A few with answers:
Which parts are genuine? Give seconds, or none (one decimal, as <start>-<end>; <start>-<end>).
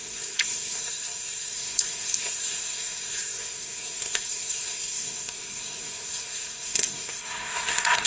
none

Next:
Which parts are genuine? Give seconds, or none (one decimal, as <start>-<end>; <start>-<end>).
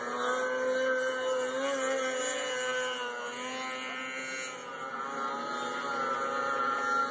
0.0-7.1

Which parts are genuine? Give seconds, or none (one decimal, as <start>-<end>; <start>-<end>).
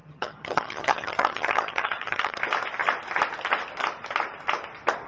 2.4-5.1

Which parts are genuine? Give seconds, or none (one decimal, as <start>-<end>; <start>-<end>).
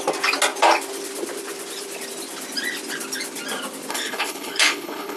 0.0-3.9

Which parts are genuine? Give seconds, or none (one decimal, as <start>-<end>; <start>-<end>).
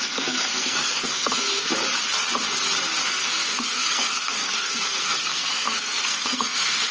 1.7-3.1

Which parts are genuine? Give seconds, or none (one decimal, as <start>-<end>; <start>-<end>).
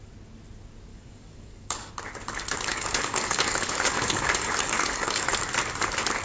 0.0-0.9; 1.9-2.7; 5.3-6.2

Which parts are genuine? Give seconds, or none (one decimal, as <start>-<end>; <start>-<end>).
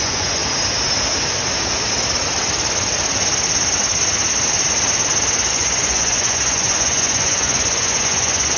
0.4-5.5